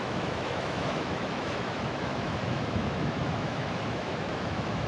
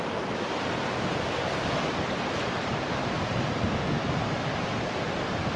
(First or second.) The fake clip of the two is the first